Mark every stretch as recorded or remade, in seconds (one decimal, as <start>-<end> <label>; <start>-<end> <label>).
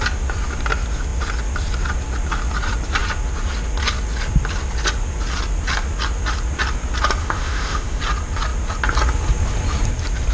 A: 0.0-7.2 recorded; 7.2-8.0 remade; 8.0-10.3 recorded